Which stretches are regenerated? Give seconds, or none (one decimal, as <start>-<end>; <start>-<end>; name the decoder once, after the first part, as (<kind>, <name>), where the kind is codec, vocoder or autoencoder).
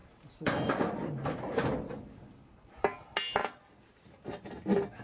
0.0-1.9 (vocoder, BigVGAN v2)